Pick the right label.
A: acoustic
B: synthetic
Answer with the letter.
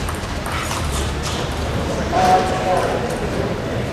B